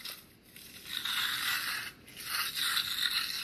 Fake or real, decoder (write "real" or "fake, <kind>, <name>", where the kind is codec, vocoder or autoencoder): real